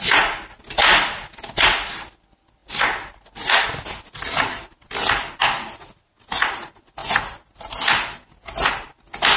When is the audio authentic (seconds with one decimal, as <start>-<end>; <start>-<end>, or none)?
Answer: 0.0-9.4